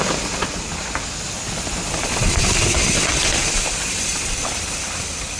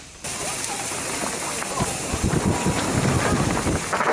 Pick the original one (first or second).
second